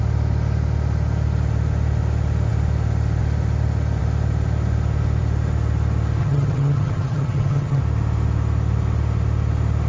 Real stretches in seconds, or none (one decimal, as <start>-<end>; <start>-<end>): 0.0-6.2; 7.8-9.9